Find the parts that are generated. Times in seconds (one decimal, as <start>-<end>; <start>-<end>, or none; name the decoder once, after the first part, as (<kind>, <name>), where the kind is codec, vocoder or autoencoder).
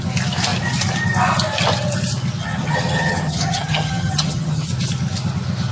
2.4-4.7 (vocoder, HiFi-GAN)